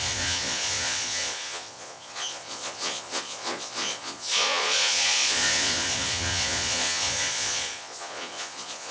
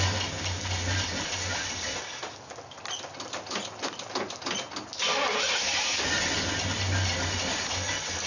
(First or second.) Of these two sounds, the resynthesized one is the first